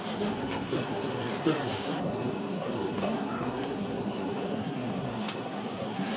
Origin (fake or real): fake